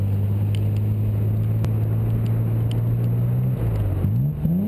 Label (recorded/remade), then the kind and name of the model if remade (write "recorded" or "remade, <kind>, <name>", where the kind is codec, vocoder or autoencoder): recorded